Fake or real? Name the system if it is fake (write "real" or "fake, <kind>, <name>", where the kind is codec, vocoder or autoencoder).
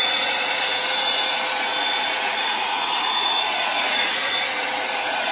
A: fake, vocoder, Vocos